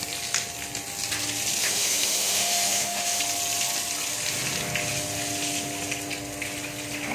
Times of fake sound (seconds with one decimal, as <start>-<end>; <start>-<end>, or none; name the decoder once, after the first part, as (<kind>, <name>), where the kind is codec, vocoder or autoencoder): 1.6-3.2 (autoencoder, DAC-VAE)